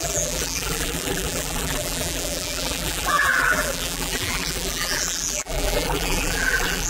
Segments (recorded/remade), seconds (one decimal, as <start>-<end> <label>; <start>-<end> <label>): 0.0-6.9 remade